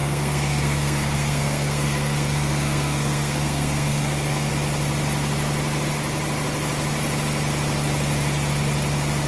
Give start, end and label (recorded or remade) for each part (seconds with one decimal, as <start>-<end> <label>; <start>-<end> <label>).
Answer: 0.0-4.5 remade; 4.5-9.3 recorded